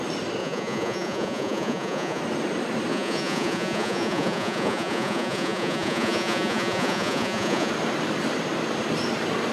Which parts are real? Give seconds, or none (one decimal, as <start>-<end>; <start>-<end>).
0.0-0.4; 2.2-2.9; 7.7-9.5